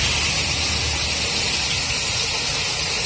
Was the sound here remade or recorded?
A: recorded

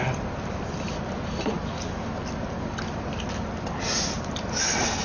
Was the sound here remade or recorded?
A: recorded